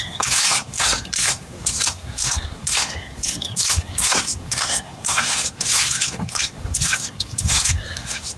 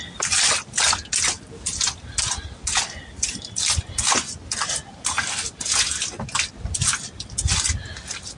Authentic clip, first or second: second